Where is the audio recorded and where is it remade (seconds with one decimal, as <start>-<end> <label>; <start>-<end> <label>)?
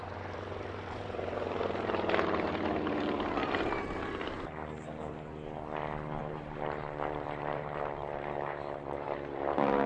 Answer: 0.0-5.1 remade; 5.1-6.2 recorded; 6.2-9.9 remade